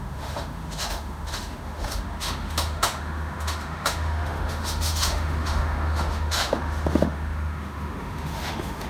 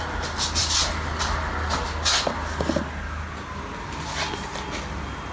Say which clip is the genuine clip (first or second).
second